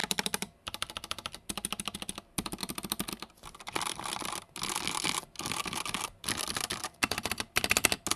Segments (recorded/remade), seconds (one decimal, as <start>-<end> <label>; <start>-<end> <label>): 0.0-1.4 remade; 1.4-2.6 recorded; 2.6-3.1 remade; 3.1-8.2 recorded